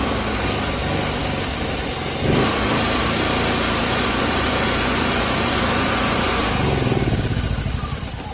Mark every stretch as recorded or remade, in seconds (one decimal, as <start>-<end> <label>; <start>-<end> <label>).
0.0-3.8 recorded; 3.8-6.4 remade; 6.4-8.3 recorded